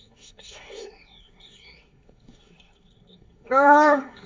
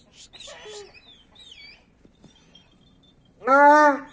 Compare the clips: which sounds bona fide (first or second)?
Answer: second